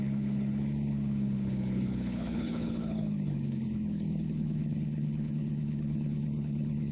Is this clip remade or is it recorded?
remade